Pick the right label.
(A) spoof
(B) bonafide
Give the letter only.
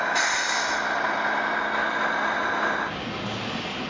B